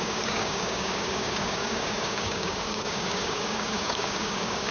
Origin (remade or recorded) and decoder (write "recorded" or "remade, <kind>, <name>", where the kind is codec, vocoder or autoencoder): remade, codec, DAC